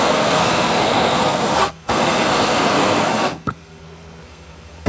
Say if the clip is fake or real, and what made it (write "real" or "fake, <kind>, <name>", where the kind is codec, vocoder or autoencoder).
fake, codec, SNAC